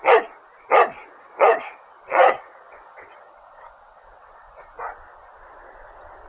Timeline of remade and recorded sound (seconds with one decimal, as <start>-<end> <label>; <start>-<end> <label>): 0.0-1.0 recorded; 1.0-4.8 remade; 4.8-6.3 recorded